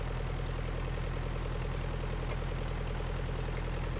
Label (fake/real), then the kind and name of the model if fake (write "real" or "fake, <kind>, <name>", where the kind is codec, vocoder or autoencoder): real